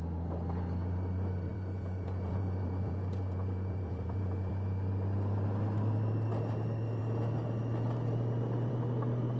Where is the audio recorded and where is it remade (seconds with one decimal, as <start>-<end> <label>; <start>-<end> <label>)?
0.0-1.5 recorded; 1.5-4.5 remade; 4.5-9.4 recorded